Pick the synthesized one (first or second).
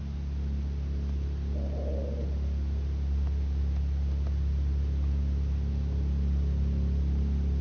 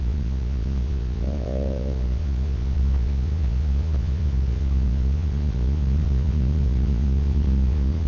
second